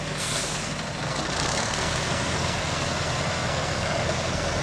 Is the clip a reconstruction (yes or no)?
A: yes